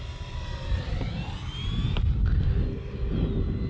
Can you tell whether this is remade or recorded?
recorded